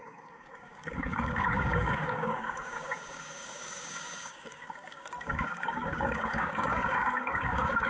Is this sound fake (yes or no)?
yes